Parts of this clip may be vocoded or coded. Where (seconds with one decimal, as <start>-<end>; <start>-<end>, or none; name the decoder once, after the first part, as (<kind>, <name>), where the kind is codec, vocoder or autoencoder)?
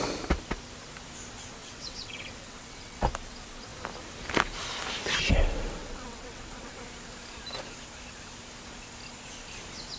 1.6-3.0 (vocoder, WaveNeXt); 5.8-6.8